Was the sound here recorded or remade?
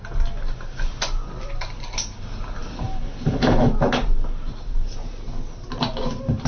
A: recorded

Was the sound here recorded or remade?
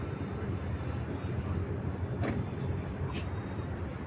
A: recorded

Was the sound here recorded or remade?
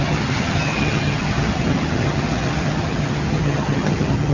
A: remade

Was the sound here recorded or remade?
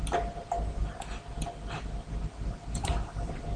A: recorded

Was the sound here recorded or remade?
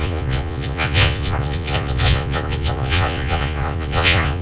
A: remade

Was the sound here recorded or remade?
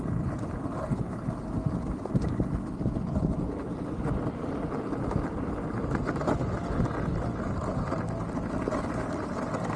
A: recorded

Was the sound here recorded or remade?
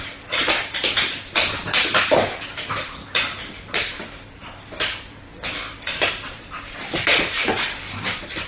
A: remade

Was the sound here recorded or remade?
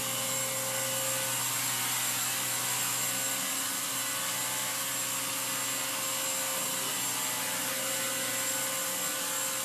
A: recorded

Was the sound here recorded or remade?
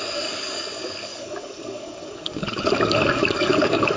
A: remade